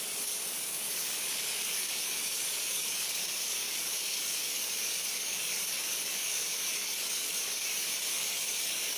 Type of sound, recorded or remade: remade